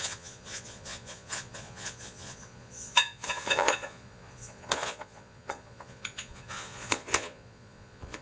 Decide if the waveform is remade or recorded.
remade